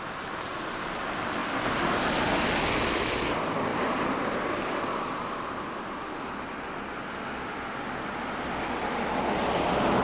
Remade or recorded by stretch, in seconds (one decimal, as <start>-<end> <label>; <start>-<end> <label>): 0.0-10.0 recorded

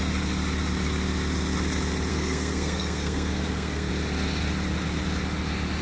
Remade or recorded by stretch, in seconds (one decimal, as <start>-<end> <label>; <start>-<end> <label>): 0.0-2.1 recorded; 2.1-3.9 remade; 3.9-5.8 recorded

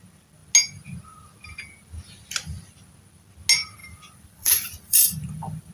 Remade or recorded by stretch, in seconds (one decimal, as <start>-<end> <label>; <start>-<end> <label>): 0.0-3.8 recorded; 3.8-5.7 remade

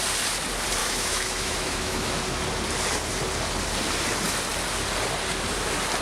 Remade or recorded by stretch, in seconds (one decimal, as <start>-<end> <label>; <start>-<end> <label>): 0.0-0.8 recorded; 0.8-2.1 remade; 2.1-6.0 recorded

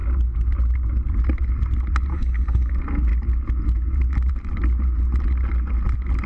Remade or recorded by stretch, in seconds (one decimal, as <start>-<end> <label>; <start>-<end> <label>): 0.0-2.1 recorded; 2.1-2.7 remade; 2.7-6.3 recorded

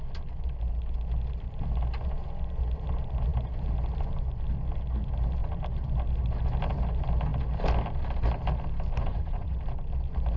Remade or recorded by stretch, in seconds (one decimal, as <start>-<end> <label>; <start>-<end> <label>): 0.0-9.0 recorded; 9.0-9.6 remade; 9.6-10.4 recorded